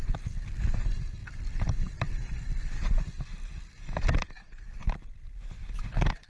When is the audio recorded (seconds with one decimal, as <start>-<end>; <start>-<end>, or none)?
0.0-1.2; 4.9-6.3